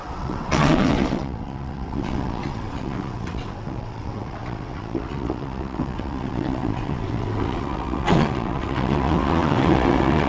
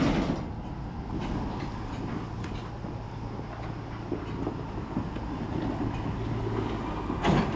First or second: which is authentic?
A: second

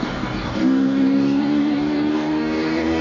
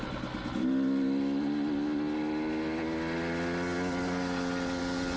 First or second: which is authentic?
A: second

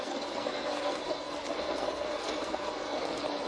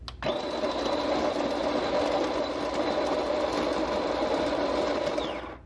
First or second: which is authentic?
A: second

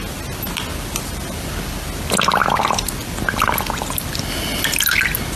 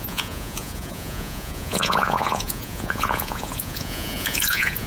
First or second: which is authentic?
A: first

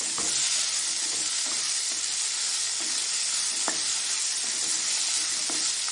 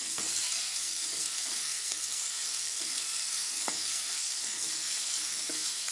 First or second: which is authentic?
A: first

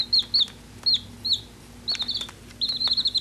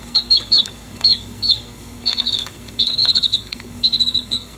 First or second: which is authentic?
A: first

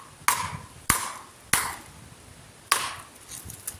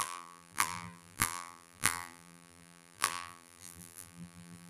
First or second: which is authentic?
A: first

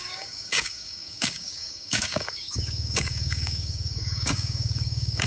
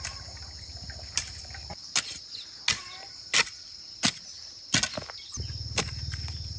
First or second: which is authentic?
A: second